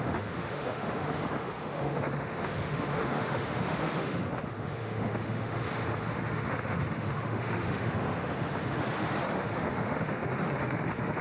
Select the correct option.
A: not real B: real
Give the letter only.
A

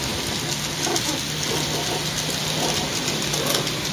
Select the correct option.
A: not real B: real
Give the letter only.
B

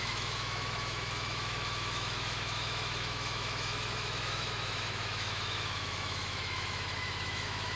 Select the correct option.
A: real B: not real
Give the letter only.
B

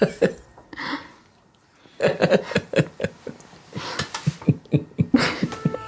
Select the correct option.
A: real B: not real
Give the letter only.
A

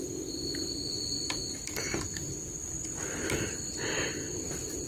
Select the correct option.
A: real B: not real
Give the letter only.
A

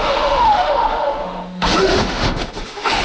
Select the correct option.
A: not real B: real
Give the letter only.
A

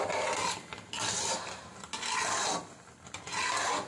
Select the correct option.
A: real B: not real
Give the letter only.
A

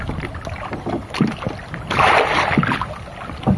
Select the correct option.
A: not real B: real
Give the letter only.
B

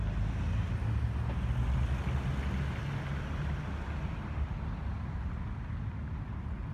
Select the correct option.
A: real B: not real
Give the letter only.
A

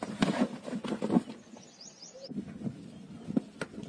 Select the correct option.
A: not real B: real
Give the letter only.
B